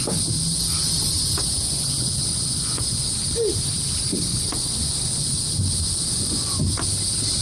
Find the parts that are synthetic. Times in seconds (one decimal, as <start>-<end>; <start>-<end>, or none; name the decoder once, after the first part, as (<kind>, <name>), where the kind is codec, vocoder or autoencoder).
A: 1.4-3.2 (vocoder, Vocos); 4.3-5.1; 6.1-6.6